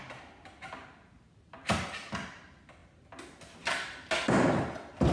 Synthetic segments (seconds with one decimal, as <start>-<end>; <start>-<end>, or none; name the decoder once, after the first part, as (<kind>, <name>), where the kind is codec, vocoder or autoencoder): 0.8-1.9 (vocoder, BigVGAN v2)